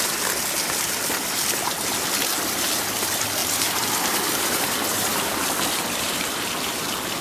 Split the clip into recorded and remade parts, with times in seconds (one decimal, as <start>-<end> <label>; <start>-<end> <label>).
0.0-3.4 recorded; 3.4-6.4 remade; 6.4-7.2 recorded